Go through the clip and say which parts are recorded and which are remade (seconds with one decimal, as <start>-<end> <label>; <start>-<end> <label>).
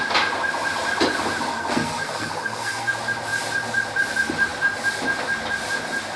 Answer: 0.0-1.5 recorded; 1.5-2.9 remade; 2.9-6.2 recorded